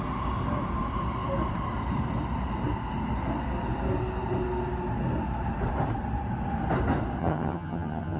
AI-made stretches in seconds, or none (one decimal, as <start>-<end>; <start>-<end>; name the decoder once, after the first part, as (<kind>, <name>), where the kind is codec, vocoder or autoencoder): 7.2-8.2 (vocoder, HiFi-GAN)